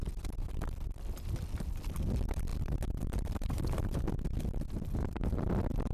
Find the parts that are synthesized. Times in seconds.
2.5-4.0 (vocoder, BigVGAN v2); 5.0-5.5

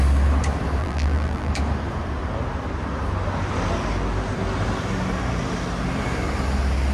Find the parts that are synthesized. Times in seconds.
0.8-1.5 (vocoder, BigVGAN v2)

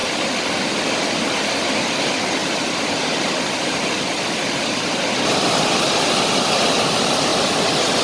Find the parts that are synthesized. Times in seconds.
0.0-1.0 (vocoder, BigVGAN v2); 2.4-5.8

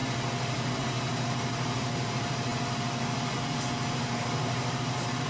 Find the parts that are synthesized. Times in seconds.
0.7-2.5 (vocoder, BigVGAN v2); 3.9-5.3